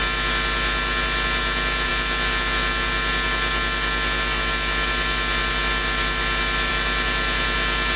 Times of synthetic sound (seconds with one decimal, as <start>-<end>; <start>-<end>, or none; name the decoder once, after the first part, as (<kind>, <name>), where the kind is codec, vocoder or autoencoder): none

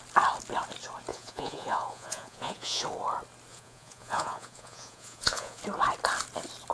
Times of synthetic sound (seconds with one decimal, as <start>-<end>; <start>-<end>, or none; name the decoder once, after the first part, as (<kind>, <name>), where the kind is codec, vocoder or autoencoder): 1.1-2.8 (vocoder, Vocos); 3.5-5.6

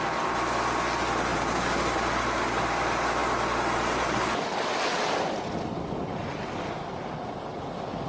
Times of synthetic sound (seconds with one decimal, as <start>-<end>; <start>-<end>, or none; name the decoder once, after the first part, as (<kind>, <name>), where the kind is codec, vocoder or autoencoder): none

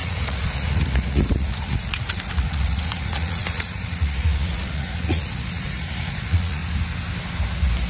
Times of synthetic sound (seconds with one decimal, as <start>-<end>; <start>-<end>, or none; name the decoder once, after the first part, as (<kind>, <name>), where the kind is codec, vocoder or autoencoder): 0.0-6.6 (vocoder, Vocos)

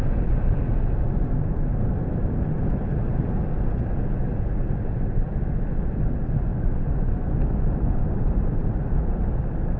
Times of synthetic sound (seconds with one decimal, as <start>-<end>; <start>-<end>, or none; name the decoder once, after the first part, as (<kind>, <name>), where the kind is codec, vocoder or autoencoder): 6.5-7.3 (vocoder, Vocos)

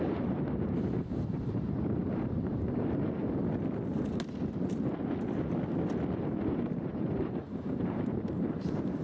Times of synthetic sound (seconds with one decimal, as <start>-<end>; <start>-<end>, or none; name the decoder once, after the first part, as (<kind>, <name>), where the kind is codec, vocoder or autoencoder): 0.0-3.4 (vocoder, BigVGAN v2); 6.2-9.0

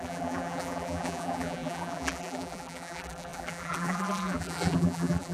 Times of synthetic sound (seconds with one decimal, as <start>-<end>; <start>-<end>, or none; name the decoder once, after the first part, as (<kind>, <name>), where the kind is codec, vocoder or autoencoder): 0.0-5.3 (vocoder, BigVGAN v2)